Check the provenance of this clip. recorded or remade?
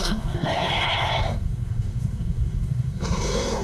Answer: remade